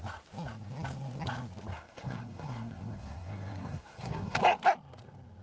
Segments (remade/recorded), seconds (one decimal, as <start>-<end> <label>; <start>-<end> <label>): 0.0-1.7 recorded; 1.7-4.4 remade; 4.4-5.4 recorded